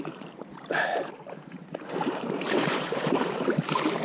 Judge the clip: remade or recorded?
remade